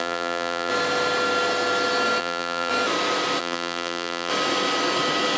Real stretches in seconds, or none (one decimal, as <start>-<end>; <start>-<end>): 0.7-2.2; 2.7-3.4; 4.3-5.4